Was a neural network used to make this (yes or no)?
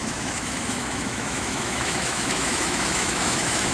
yes